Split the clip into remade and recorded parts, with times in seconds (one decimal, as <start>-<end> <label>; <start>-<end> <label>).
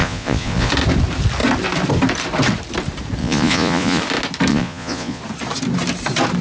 0.0-0.7 remade; 0.7-3.2 recorded; 3.2-4.0 remade; 4.0-4.5 recorded; 4.5-5.2 remade; 5.2-6.4 recorded